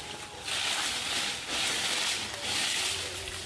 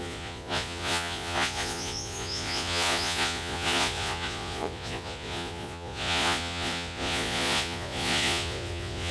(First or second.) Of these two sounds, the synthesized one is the second